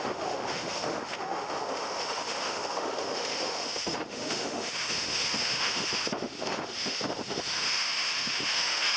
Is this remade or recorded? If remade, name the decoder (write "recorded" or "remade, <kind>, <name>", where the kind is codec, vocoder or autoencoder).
remade, autoencoder, DAC-VAE